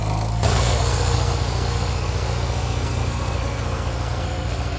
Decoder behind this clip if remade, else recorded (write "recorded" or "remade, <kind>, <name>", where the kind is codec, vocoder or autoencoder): remade, codec, SNAC